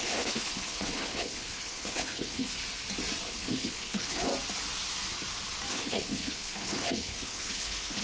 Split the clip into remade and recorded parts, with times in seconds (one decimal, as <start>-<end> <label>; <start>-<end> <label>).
0.0-2.6 remade; 2.6-3.3 recorded; 3.3-4.3 remade; 4.3-5.7 recorded; 5.7-8.0 remade